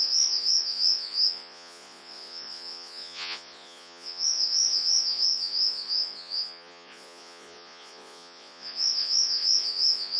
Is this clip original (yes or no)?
no